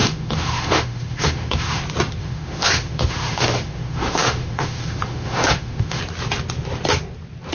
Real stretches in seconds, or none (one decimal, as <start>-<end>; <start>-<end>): 1.8-2.2; 6.0-7.5